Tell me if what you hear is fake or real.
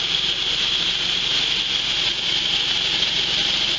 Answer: real